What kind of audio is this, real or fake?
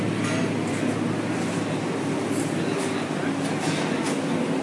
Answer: real